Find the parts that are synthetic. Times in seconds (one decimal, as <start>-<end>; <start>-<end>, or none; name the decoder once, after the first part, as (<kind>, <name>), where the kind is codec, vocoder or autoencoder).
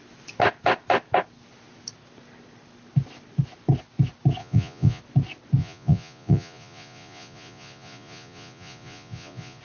4.4-5.0 (vocoder, Vocos); 5.6-9.6